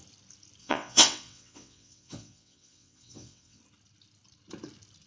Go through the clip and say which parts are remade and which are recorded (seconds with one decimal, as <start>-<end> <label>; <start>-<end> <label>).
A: 0.0-0.6 recorded; 0.6-3.6 remade; 3.6-5.1 recorded